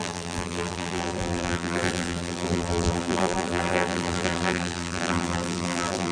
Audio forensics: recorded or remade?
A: remade